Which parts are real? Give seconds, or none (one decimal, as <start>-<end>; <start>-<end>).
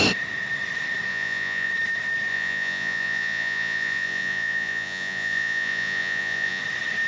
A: 0.0-1.1; 1.7-2.3; 6.6-7.1